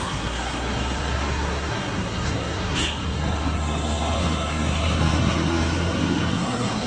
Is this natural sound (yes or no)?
no